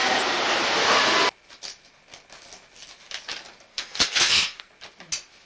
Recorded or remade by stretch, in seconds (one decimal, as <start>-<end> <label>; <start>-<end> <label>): 0.0-3.7 recorded; 3.7-4.7 remade; 4.7-5.5 recorded